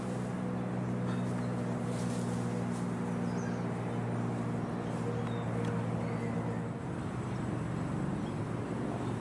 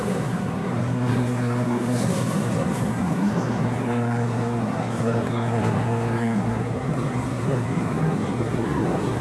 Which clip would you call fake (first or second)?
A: second